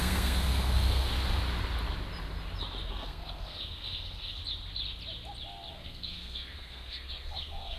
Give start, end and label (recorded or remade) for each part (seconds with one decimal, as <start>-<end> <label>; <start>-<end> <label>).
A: 0.0-1.1 remade; 1.1-2.9 recorded; 2.9-4.4 remade; 4.4-5.7 recorded; 5.7-7.8 remade